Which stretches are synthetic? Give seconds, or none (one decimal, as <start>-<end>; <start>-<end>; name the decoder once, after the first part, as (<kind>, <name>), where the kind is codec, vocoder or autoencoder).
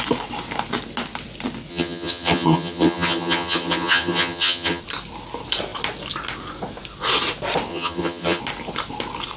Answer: 1.7-4.8 (vocoder, HiFi-GAN); 7.7-8.4